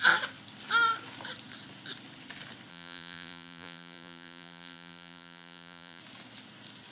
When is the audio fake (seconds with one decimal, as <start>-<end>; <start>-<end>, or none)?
2.7-6.0